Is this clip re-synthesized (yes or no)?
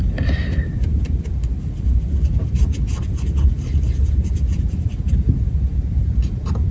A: yes